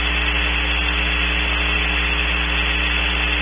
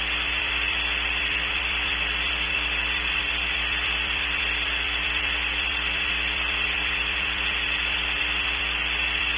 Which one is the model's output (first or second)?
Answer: second